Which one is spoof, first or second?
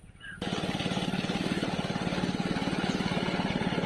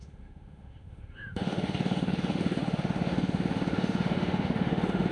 second